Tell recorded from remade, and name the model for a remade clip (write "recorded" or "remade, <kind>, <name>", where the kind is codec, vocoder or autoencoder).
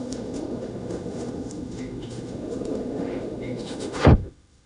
remade, autoencoder, DAC-VAE